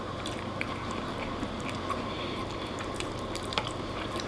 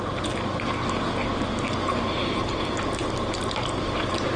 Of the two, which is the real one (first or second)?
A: second